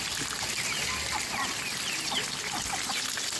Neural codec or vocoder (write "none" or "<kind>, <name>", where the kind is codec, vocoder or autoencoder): none